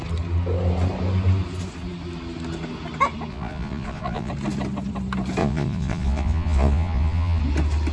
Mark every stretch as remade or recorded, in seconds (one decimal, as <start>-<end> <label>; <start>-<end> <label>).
0.0-3.3 recorded; 3.3-4.3 remade; 4.3-5.4 recorded; 5.4-7.4 remade; 7.4-7.9 recorded